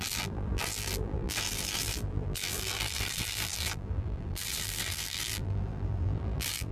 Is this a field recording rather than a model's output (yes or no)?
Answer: no